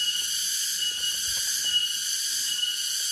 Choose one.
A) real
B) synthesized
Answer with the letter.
A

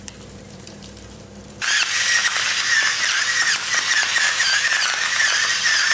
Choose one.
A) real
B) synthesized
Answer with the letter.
B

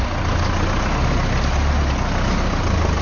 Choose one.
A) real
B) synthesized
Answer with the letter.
A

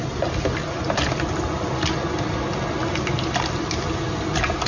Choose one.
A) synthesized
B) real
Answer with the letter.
B